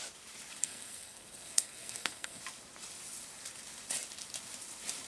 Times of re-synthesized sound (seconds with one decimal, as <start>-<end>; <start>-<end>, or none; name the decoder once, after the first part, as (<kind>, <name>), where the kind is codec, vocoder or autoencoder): 0.6-2.4 (codec, SNAC)